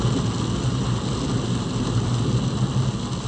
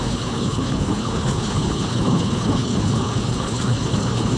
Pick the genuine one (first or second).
first